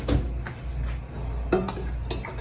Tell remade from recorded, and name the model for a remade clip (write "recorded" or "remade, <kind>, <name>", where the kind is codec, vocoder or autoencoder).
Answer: recorded